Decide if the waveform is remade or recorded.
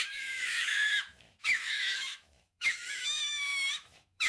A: remade